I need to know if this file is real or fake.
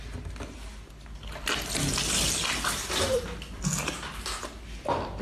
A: real